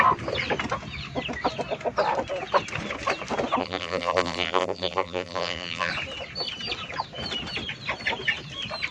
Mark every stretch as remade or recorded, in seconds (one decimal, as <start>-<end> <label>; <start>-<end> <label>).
0.0-3.6 recorded; 3.6-5.9 remade; 5.9-8.9 recorded